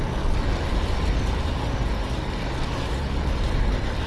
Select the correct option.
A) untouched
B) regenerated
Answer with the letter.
A